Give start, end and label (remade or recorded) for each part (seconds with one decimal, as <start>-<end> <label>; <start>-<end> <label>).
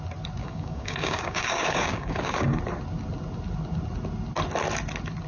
0.0-0.4 recorded; 0.4-2.6 remade; 2.6-5.3 recorded